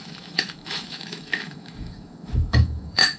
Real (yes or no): no